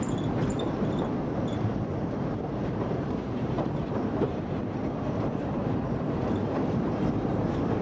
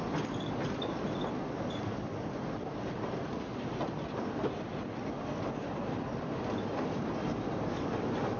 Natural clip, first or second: second